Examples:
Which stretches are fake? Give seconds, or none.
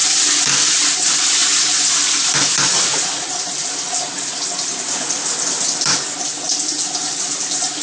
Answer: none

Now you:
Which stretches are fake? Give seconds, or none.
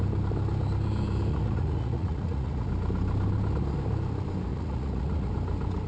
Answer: 1.3-2.7 (vocoder, Vocos); 4.5-5.3